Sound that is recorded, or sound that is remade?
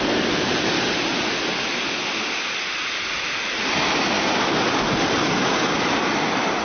recorded